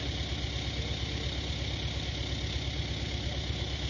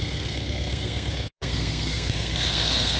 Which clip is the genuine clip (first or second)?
first